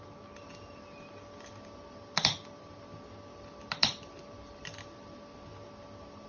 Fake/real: real